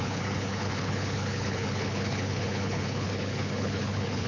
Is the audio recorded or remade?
remade